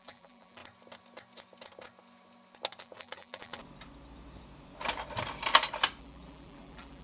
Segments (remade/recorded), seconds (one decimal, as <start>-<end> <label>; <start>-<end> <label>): 0.0-0.6 remade; 0.6-2.8 recorded; 2.8-3.6 remade; 3.6-6.0 recorded; 6.0-7.0 remade